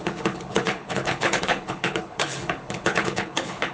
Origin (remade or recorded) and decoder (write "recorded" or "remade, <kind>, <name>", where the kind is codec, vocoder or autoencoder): remade, codec, HILCodec